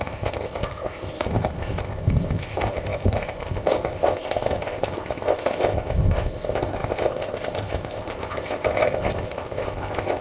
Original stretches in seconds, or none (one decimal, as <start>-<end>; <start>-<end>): none